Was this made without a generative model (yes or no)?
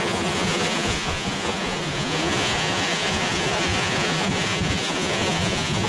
no